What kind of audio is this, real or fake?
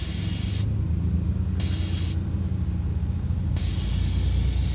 real